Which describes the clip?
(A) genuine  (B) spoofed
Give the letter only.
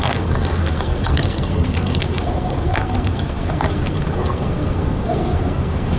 B